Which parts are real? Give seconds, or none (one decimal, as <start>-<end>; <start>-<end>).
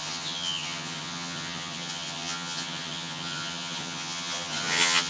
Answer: none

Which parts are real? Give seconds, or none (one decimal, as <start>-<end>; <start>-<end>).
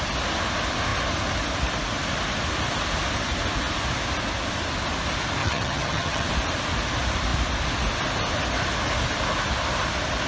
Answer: 0.0-5.4; 6.3-10.3